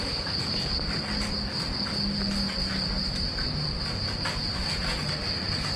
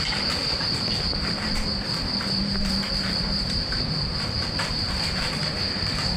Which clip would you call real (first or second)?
first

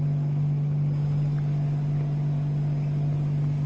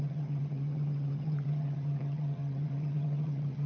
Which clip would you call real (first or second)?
first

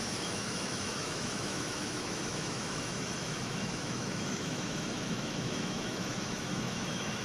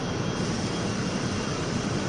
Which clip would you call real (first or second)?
second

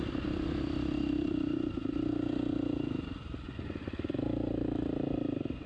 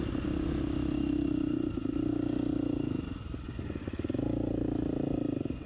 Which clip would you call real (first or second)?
second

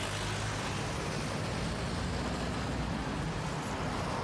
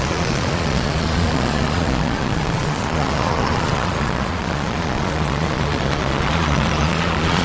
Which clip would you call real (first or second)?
first